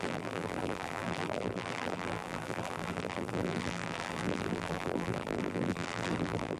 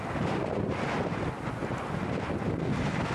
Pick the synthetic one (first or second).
first